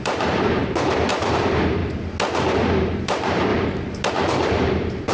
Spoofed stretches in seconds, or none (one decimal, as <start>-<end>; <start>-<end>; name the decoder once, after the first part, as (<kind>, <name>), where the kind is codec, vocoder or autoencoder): 0.0-0.6 (vocoder, BigVGAN v2); 1.1-1.8; 3.0-3.5; 4.1-5.1